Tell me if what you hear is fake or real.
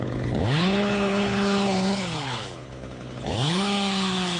fake